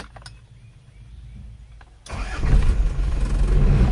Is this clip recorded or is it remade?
recorded